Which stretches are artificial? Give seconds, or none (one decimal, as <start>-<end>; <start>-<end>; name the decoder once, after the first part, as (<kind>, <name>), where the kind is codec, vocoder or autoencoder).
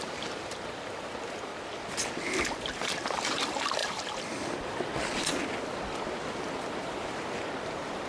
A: 0.0-1.5 (vocoder, BigVGAN v2); 2.5-3.8; 6.8-8.1